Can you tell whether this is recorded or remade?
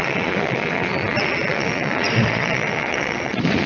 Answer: remade